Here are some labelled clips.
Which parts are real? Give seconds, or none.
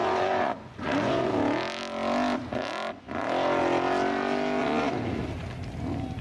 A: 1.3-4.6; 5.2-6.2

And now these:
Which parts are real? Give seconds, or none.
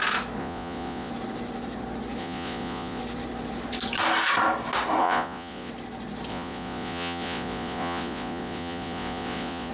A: 0.0-0.4; 1.1-2.2; 3.0-5.0; 5.7-6.3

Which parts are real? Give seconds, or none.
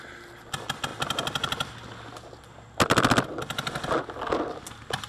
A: 0.0-5.1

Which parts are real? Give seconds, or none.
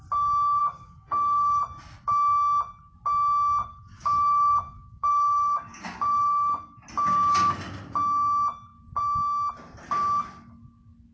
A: 0.0-0.6; 1.6-3.6; 6.8-11.1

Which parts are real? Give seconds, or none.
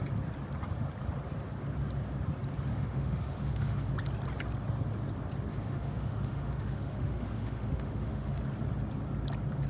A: 0.0-2.7; 3.9-5.5; 8.4-9.7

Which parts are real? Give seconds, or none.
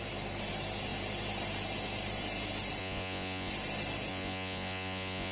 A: 0.0-2.8; 3.5-4.1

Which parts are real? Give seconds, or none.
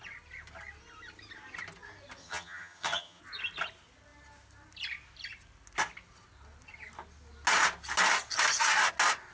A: 0.0-2.2; 3.2-9.3